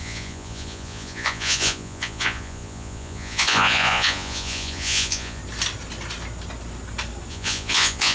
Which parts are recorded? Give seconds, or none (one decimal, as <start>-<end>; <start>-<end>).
5.4-7.3